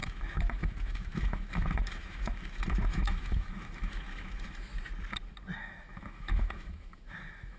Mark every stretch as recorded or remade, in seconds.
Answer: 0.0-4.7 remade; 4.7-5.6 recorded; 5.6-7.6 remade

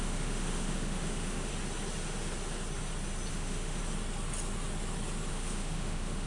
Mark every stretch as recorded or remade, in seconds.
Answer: 0.0-1.5 remade; 1.5-3.3 recorded; 3.3-3.8 remade; 3.8-5.3 recorded; 5.3-6.3 remade

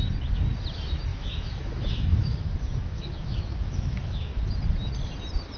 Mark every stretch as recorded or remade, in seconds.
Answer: 0.0-1.1 recorded; 1.1-4.5 remade; 4.5-5.6 recorded

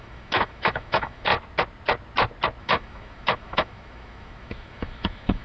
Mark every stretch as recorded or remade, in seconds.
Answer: 0.0-1.3 remade; 1.3-2.6 recorded; 2.6-5.4 remade

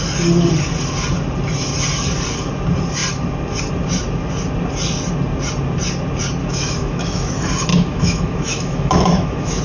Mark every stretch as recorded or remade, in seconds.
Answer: 0.0-6.4 recorded; 6.4-7.3 remade; 7.3-7.7 recorded; 7.7-9.6 remade

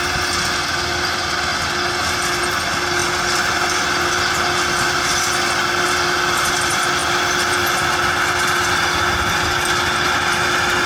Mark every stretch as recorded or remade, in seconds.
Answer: 0.0-10.9 recorded